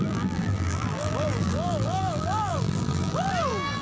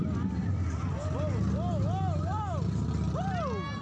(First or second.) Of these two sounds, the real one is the second